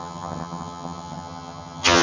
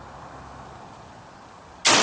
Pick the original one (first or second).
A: second